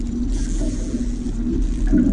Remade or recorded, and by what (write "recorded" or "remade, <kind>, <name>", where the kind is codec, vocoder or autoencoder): recorded